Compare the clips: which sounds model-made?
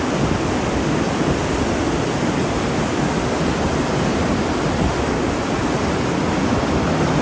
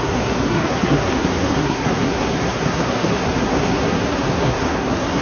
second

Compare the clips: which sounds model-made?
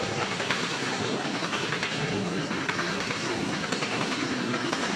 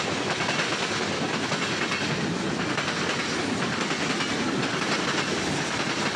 first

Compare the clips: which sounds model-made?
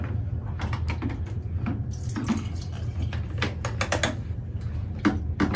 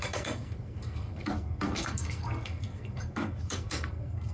second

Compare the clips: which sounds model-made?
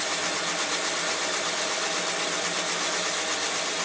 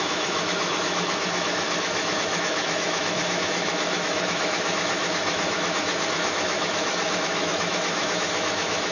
second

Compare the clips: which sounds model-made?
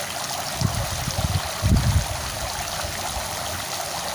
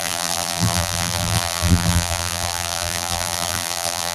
second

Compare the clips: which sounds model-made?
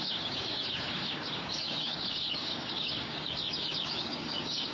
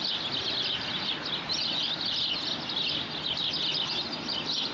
first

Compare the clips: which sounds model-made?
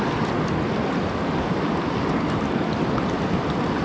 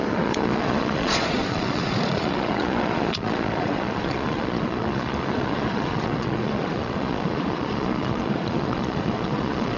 second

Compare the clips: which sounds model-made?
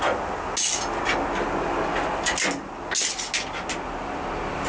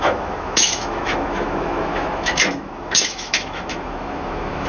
second